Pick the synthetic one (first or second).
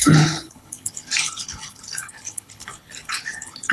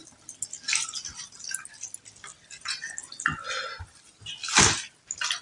first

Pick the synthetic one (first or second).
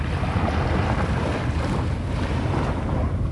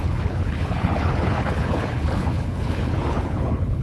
second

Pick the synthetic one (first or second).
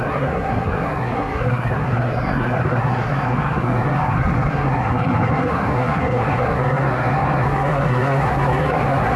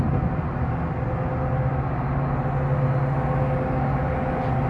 first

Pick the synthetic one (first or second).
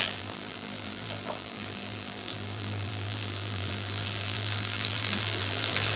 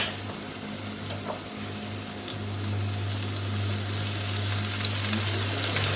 first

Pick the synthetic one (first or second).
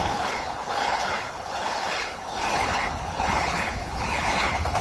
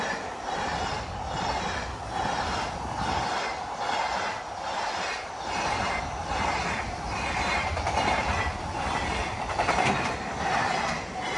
first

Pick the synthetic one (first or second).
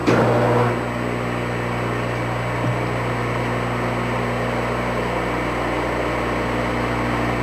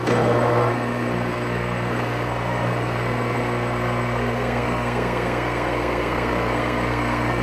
second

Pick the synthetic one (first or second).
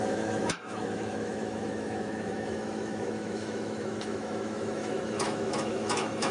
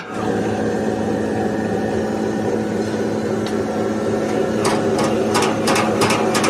first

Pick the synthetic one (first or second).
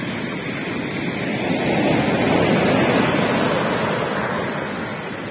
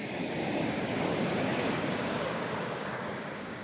second